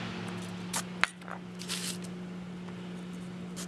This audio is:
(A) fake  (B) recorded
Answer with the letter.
B